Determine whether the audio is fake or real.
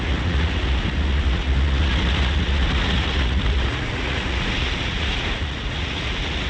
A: fake